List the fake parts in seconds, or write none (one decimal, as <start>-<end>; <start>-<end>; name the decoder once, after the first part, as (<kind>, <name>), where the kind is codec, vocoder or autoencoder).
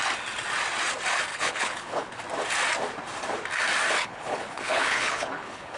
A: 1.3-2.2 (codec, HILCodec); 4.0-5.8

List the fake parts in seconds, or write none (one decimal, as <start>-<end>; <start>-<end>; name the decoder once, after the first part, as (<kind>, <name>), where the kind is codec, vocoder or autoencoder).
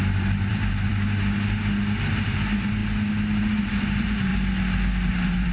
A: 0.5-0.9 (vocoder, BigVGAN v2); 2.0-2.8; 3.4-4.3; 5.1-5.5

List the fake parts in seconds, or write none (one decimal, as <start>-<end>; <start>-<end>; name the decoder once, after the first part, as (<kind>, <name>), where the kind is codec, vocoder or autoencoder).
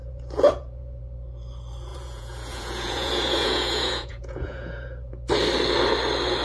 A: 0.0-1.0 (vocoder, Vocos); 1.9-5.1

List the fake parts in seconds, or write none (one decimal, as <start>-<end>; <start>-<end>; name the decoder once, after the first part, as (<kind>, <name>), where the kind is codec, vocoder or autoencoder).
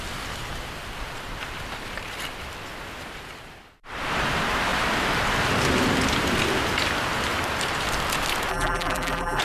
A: 8.5-9.4 (vocoder, BigVGAN v2)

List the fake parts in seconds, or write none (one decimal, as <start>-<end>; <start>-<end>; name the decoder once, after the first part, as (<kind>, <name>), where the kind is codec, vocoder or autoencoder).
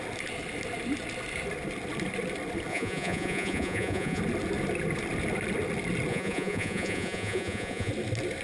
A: 2.7-4.2 (vocoder, Vocos); 6.1-7.9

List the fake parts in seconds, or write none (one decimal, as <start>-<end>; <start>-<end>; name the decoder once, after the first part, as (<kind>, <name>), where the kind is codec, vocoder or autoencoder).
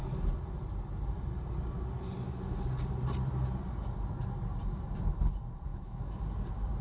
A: 5.7-6.2 (autoencoder, DAC-VAE)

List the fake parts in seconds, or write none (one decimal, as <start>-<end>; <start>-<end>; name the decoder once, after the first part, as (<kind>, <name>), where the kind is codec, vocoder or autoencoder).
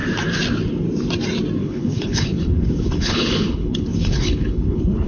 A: 1.6-5.1 (codec, HILCodec)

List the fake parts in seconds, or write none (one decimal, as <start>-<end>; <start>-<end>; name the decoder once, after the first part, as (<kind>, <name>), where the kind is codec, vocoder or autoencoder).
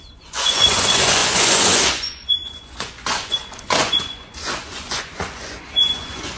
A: 0.0-6.4 (vocoder, Vocos)